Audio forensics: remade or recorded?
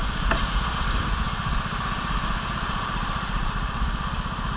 recorded